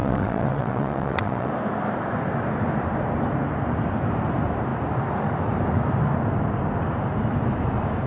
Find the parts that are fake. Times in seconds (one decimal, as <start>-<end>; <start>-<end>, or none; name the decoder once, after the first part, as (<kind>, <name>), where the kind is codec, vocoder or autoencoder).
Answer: 0.0-1.5 (vocoder, WaveNeXt)